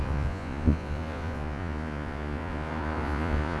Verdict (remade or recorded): remade